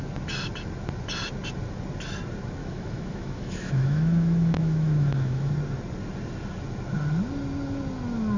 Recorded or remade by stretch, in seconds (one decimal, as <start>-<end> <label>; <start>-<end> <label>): 0.0-2.6 recorded; 2.6-5.5 remade; 5.5-8.4 recorded